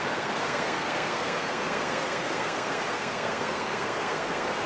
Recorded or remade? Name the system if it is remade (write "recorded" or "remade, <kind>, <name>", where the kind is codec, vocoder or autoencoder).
remade, codec, SNAC